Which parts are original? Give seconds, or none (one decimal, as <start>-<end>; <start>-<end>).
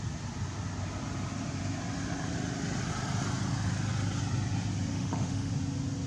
0.0-4.9; 5.5-6.1